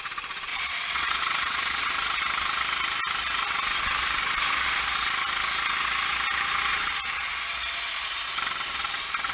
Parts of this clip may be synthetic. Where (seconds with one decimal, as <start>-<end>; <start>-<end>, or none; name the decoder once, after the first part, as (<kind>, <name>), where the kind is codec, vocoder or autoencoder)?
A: 0.5-1.9 (vocoder, Vocos); 6.7-7.4